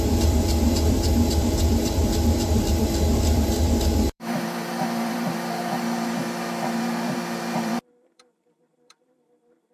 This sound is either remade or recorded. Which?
remade